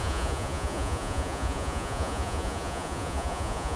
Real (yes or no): no